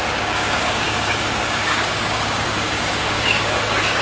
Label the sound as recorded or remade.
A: remade